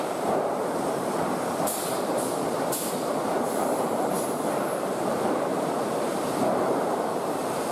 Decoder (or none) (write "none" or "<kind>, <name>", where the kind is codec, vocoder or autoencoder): vocoder, BigVGAN v2